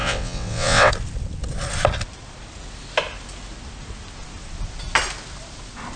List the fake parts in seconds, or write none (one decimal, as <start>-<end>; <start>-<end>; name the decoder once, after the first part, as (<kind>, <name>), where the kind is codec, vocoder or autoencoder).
0.0-0.9 (vocoder, WaveNeXt)